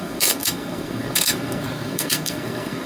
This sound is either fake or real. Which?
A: fake